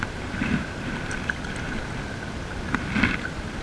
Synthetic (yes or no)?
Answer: yes